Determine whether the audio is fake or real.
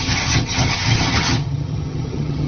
fake